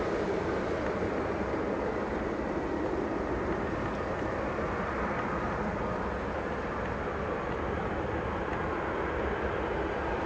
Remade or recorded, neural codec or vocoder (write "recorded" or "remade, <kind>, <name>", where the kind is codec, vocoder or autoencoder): recorded